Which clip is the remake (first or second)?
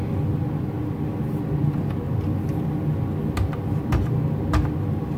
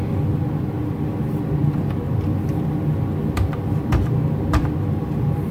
second